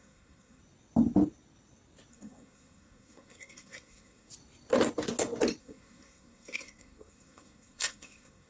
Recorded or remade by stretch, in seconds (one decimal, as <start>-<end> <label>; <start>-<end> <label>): 0.0-0.6 remade; 0.6-2.1 recorded; 2.1-4.3 remade; 4.3-5.6 recorded; 5.6-8.5 remade